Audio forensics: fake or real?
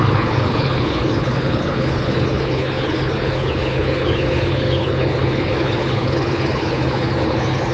fake